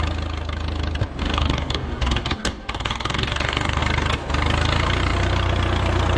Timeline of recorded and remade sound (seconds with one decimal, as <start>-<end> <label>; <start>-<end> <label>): 0.0-1.2 recorded; 1.2-3.8 remade; 3.8-6.2 recorded

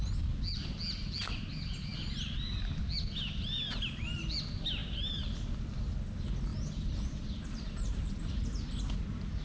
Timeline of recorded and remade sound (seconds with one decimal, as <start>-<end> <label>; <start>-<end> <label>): 0.0-4.8 recorded; 4.8-5.9 remade; 5.9-6.5 recorded; 6.5-8.8 remade; 8.8-9.4 recorded